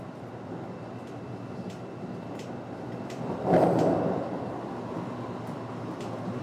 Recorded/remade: recorded